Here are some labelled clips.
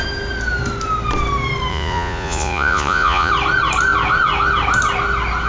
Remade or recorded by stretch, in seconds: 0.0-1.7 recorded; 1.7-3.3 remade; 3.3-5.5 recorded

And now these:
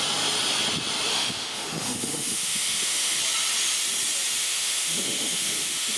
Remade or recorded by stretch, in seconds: 0.0-1.1 recorded; 1.1-3.2 remade; 3.2-4.4 recorded; 4.4-6.0 remade

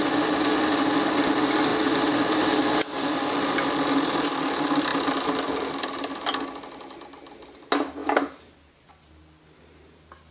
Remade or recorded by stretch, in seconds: 0.0-1.7 recorded; 1.7-4.1 remade; 4.1-8.0 recorded; 8.0-8.9 remade; 8.9-10.3 recorded